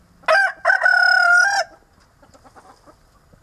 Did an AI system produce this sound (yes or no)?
no